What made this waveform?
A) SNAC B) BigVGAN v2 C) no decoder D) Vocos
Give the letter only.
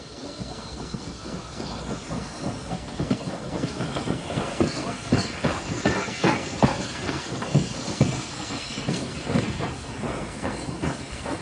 A